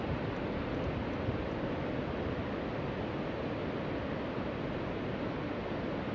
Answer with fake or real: real